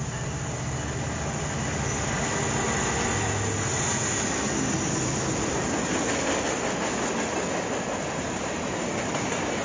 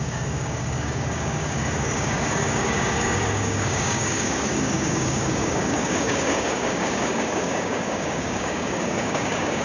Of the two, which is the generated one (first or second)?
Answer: second